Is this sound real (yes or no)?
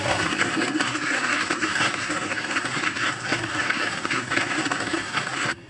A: no